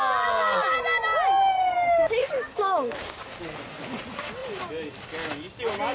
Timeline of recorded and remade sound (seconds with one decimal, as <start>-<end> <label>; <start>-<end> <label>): 0.0-2.2 recorded; 2.2-3.4 remade; 3.4-5.9 recorded